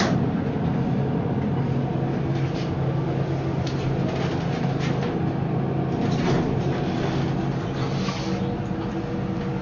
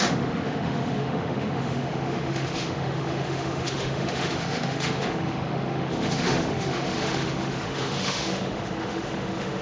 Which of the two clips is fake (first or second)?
second